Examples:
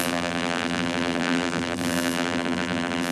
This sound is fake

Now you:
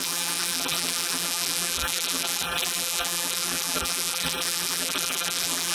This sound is fake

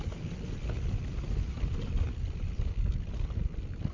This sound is real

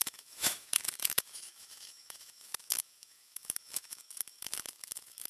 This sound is fake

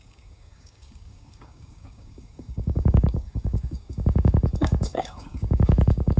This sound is fake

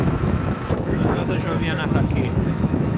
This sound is fake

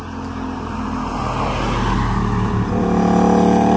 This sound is real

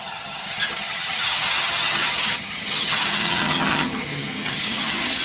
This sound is fake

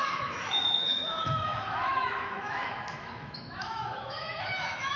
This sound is fake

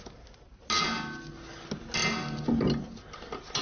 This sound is real